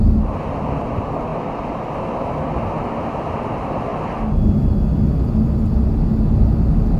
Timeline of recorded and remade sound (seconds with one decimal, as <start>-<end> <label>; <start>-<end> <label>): 0.0-7.0 recorded